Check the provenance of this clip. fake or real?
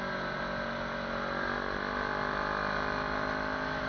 real